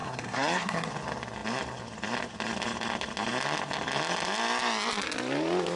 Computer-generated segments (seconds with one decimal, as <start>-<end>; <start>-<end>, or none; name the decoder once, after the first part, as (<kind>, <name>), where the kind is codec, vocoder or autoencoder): 0.0-0.9 (codec, SNAC)